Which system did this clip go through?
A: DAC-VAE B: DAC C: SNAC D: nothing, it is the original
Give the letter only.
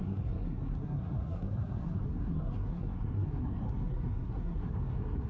C